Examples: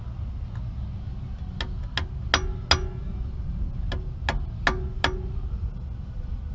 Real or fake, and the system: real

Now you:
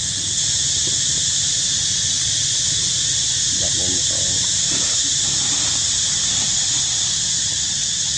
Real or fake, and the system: real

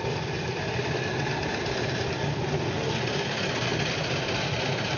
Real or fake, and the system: real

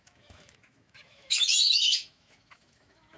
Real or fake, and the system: fake, autoencoder, DAC-VAE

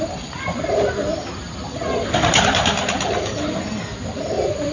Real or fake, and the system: real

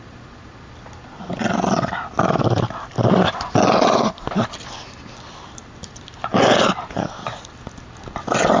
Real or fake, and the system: real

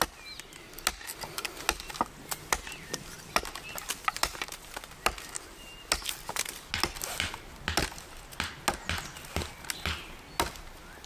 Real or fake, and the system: real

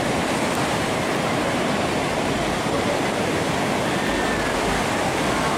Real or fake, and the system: real